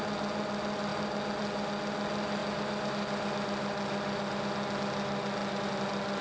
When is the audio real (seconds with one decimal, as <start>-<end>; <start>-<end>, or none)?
0.0-6.2